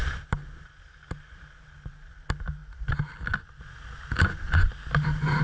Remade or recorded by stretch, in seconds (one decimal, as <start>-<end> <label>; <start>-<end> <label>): 0.0-2.1 remade; 2.1-5.4 recorded